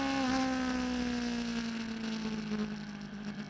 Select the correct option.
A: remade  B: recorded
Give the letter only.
B